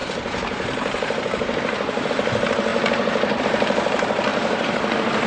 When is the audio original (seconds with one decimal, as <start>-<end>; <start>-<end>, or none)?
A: 2.7-3.4